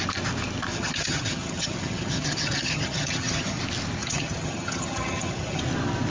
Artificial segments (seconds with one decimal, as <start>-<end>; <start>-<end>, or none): 0.7-3.6; 4.0-5.6